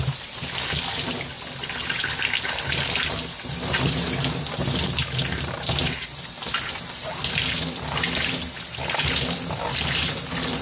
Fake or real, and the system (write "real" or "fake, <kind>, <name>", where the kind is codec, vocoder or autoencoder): real